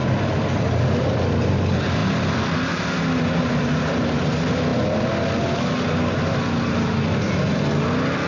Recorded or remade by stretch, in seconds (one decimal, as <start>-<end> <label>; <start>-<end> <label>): 0.0-0.8 remade; 0.8-8.3 recorded